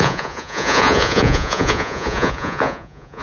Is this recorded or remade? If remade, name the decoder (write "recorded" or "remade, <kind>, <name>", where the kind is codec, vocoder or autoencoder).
remade, vocoder, Vocos